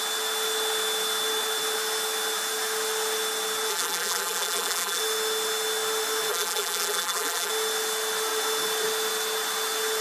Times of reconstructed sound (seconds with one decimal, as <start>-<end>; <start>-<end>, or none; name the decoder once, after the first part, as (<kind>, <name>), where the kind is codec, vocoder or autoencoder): 3.7-5.0 (vocoder, BigVGAN v2); 6.3-7.5